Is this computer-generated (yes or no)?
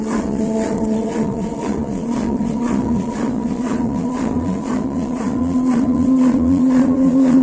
yes